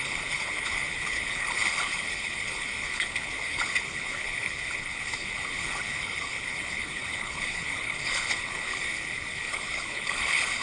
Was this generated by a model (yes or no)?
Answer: yes